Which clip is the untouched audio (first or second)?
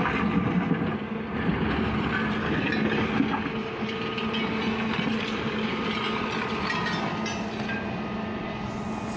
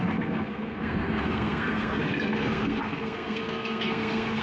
first